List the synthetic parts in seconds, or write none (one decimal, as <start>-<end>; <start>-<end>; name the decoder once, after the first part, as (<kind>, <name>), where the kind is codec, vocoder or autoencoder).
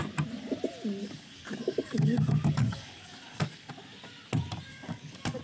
1.0-3.7 (codec, DAC); 4.7-5.4